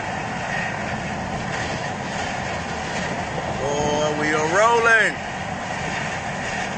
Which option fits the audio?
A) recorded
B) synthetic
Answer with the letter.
A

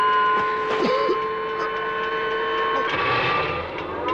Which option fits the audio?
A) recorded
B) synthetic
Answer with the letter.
A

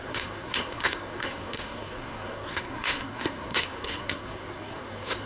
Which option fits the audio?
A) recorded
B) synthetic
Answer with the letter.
B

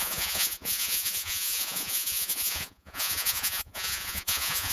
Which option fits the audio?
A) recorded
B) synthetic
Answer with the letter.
B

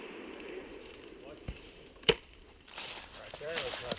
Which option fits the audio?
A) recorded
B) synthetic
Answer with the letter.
B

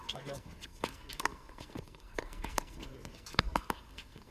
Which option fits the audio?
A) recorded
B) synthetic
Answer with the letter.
B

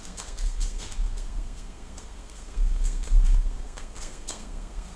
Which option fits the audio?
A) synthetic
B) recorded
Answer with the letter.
A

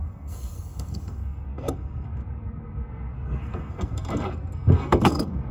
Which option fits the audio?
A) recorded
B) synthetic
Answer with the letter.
B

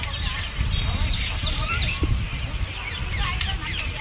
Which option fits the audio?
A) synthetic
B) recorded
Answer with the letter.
B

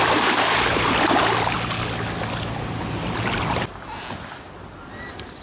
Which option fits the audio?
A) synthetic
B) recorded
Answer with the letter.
B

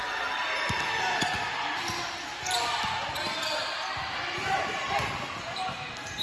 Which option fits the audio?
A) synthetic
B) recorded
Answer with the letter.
B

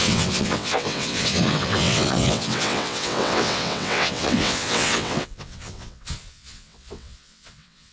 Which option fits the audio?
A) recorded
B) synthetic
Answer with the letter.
B